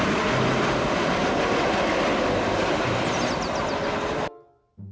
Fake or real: real